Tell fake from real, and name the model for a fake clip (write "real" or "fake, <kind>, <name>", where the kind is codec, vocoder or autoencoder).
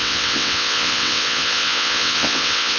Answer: fake, vocoder, WaveNeXt